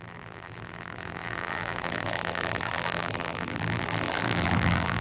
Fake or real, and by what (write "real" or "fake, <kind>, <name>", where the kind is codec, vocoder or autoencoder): fake, vocoder, BigVGAN v2